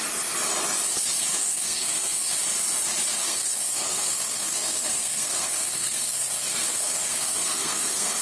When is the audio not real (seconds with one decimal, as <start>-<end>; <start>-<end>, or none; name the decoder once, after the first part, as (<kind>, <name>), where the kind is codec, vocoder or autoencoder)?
1.4-2.3 (codec, SNAC); 3.2-8.2